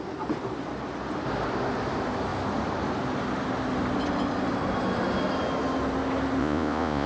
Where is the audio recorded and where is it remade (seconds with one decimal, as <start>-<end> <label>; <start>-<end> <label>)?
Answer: 0.0-6.4 recorded; 6.4-7.1 remade